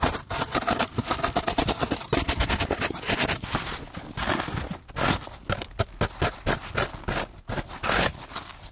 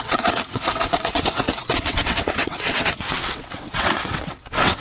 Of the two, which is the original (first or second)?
first